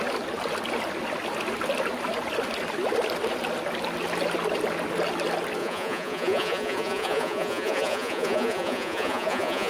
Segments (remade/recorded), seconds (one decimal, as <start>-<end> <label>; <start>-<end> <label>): 0.0-5.6 recorded; 5.6-9.7 remade